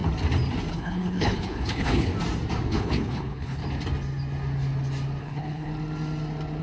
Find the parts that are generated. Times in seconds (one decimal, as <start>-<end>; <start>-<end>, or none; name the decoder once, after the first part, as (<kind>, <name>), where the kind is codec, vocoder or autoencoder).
0.7-2.1 (codec, HILCodec); 2.7-3.6; 5.2-5.7